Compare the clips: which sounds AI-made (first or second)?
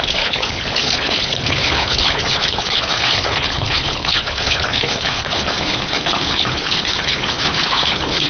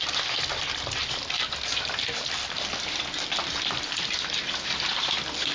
first